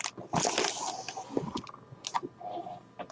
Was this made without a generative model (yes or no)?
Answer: yes